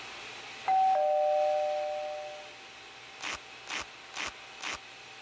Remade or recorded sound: recorded